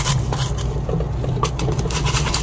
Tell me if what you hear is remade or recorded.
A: recorded